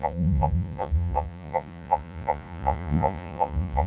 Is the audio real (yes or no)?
no